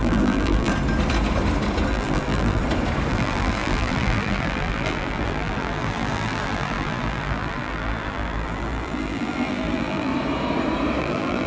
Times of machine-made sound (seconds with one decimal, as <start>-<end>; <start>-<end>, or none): 0.0-0.7; 1.9-2.6; 3.1-10.1; 11.0-11.5